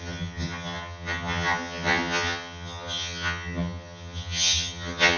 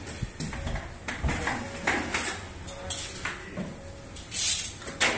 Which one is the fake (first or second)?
first